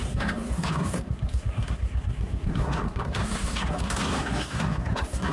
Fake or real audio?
fake